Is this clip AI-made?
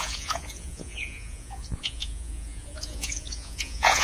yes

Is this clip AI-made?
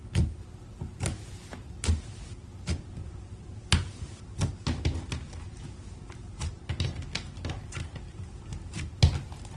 no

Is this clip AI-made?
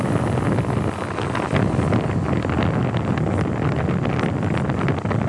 no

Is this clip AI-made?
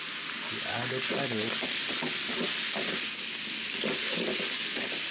no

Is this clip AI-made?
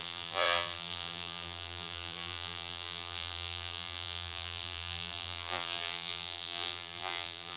yes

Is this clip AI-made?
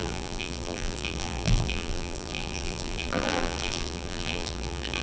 yes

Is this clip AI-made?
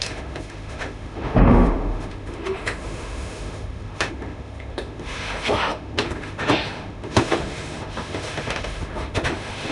yes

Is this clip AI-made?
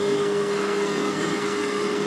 yes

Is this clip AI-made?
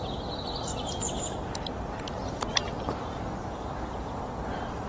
yes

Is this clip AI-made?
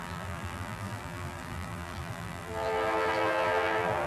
yes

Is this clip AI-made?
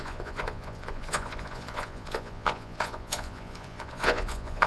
yes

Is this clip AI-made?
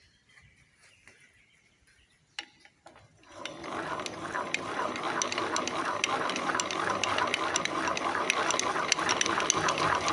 no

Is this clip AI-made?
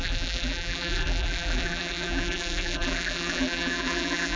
yes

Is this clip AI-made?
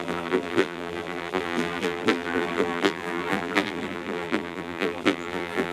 yes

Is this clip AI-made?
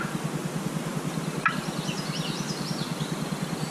no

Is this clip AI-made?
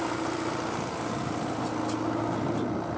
no